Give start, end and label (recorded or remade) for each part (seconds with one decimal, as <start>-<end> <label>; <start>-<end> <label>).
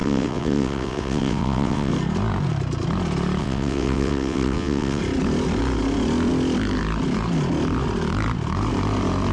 0.0-1.9 remade; 1.9-3.4 recorded; 3.4-5.0 remade; 5.0-9.3 recorded